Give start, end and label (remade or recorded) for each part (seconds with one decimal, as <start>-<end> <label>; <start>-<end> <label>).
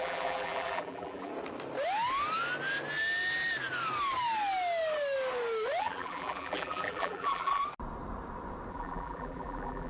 0.0-1.3 remade; 1.3-5.8 recorded; 5.8-7.6 remade; 7.6-8.7 recorded; 8.7-9.9 remade